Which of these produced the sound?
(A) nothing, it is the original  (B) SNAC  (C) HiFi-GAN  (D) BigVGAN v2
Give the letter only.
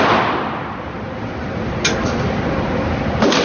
A